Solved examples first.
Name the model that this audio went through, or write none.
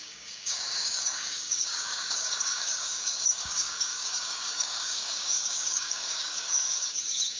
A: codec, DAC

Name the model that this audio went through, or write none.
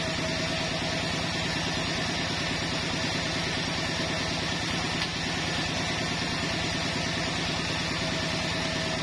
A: none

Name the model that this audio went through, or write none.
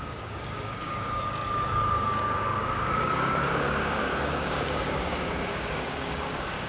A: codec, DAC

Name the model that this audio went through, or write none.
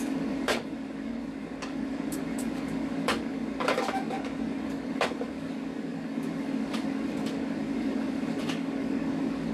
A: codec, DAC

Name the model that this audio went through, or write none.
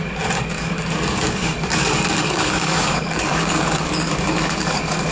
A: codec, DAC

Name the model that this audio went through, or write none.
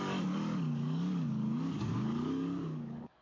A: codec, DAC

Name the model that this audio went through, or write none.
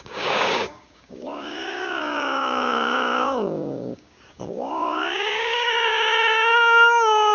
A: codec, DAC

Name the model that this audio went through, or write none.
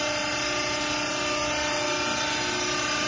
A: none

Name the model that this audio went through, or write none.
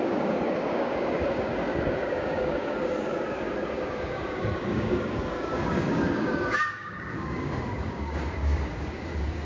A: codec, DAC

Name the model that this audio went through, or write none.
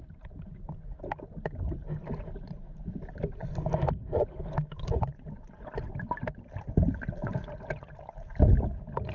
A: none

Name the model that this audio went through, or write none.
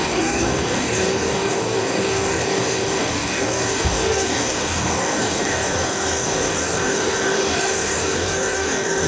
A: codec, DAC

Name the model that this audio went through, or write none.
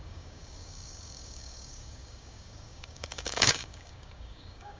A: codec, DAC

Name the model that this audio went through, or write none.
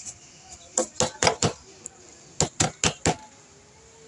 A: none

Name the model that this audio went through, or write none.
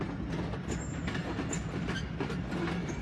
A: none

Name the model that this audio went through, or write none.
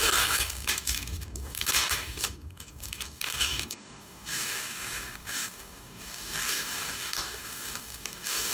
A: codec, DAC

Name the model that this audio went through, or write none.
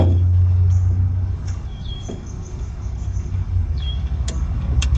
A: codec, DAC